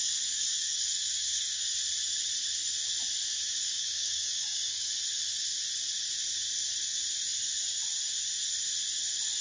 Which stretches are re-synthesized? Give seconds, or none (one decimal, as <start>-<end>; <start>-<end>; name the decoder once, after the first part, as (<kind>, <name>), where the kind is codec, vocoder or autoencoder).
0.0-1.6 (codec, DAC); 3.3-4.9